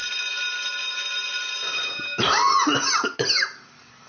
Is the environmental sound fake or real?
real